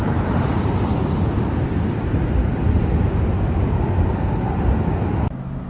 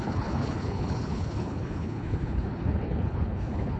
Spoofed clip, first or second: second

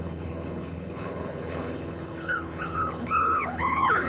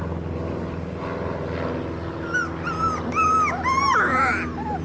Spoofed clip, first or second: first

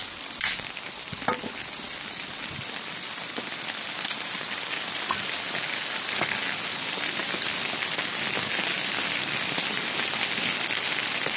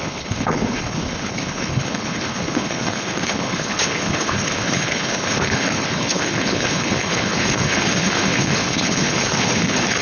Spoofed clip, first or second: second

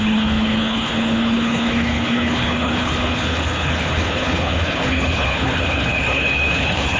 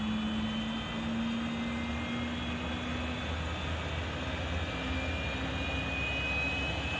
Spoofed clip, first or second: first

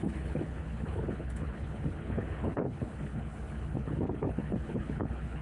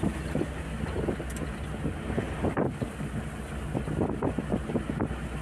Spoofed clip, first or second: first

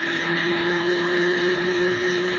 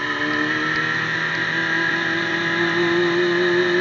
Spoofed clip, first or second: first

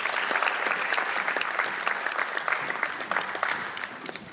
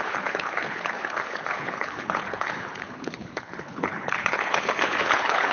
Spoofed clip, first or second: second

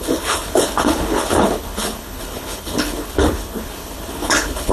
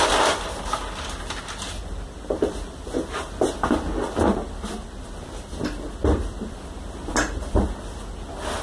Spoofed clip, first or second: first